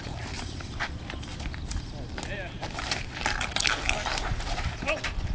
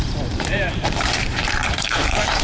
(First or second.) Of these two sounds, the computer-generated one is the second